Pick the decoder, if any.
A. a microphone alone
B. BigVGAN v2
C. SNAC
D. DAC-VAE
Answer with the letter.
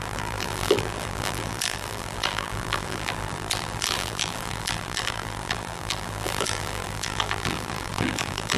B